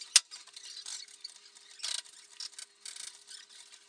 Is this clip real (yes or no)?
yes